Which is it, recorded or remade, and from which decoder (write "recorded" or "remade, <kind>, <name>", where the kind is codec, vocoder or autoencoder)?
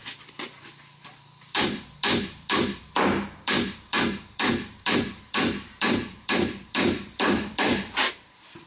remade, vocoder, BigVGAN v2